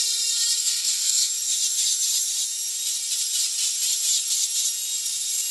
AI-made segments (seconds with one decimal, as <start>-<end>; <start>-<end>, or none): 0.6-1.3